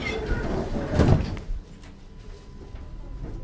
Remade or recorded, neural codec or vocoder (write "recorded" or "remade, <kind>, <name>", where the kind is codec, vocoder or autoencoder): recorded